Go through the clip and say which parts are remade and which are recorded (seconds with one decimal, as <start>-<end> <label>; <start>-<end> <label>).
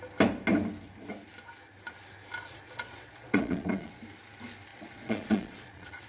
0.0-2.5 recorded; 2.5-4.0 remade; 4.0-4.7 recorded; 4.7-6.1 remade